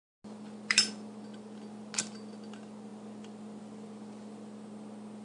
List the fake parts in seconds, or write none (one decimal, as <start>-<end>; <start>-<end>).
none